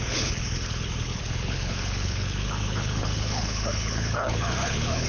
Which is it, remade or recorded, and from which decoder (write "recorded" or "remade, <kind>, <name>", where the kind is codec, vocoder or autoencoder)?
remade, codec, HILCodec